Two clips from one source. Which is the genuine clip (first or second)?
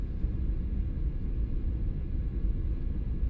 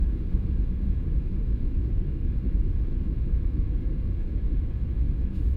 first